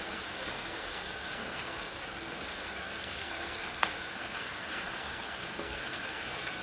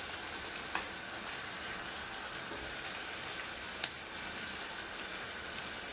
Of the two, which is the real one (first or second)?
second